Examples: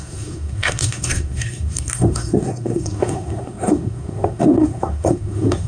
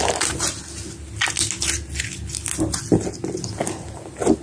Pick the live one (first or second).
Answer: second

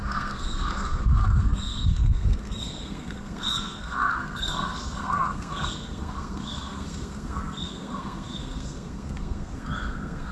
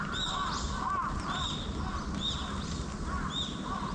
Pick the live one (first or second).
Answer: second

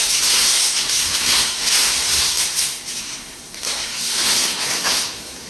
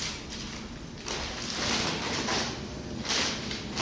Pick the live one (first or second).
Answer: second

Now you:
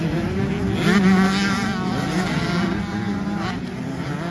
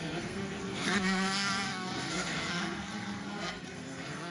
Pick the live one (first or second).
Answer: first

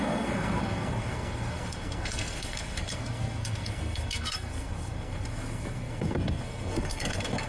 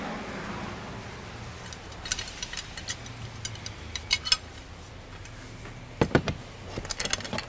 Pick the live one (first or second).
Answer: second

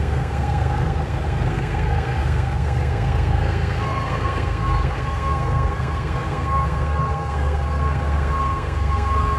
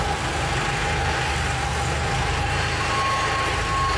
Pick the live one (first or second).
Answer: second